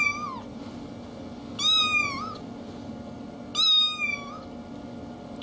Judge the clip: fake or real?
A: real